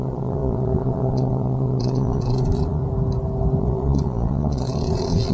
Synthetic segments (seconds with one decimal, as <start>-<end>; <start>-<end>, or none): 0.0-2.8; 3.6-5.3